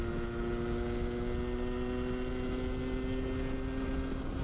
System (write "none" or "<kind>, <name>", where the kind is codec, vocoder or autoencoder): none